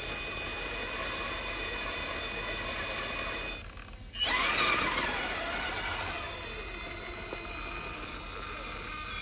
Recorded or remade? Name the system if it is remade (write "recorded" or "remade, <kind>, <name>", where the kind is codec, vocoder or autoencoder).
recorded